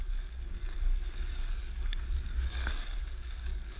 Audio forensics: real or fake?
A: fake